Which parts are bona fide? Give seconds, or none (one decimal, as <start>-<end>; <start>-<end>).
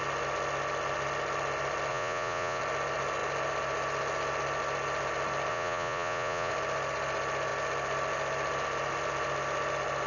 0.0-1.9; 2.6-5.5; 6.5-10.1